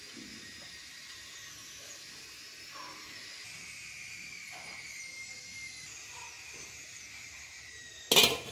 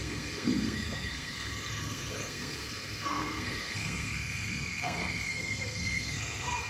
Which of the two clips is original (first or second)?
first